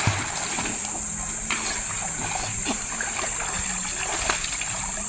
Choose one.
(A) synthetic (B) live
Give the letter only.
B